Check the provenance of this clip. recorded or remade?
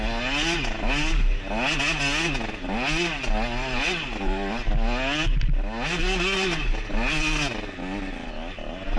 recorded